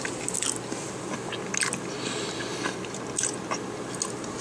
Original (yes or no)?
yes